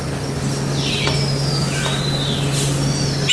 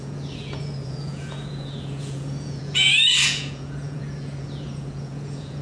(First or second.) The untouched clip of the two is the first